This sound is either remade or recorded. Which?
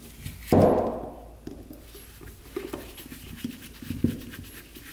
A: recorded